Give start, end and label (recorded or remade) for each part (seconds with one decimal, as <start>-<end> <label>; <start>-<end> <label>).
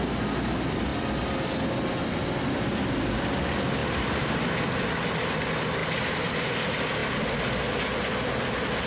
0.0-8.9 recorded